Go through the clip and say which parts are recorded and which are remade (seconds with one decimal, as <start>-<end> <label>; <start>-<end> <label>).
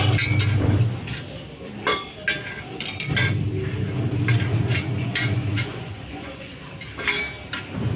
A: 0.0-4.5 recorded; 4.5-6.6 remade; 6.6-8.0 recorded